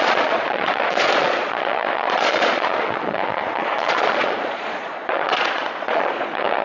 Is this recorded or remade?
remade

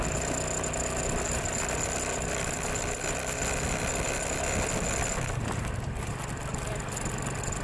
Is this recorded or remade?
recorded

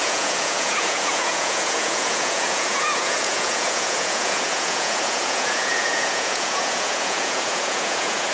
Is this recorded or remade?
remade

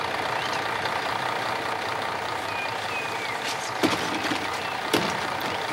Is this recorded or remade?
recorded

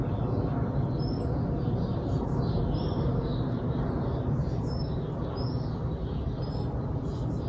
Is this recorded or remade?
recorded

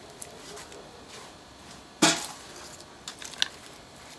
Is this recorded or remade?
recorded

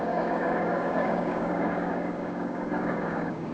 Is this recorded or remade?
remade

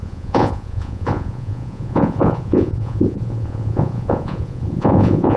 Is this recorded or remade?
remade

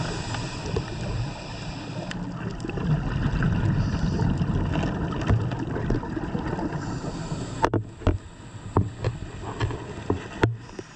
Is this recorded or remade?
recorded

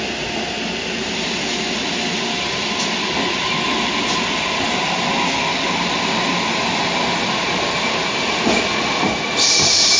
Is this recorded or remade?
recorded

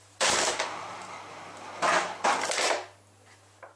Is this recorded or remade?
recorded